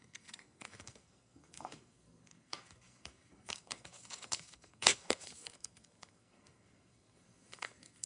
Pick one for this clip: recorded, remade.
remade